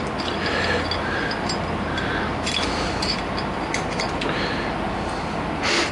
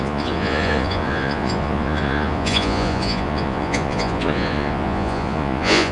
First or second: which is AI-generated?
second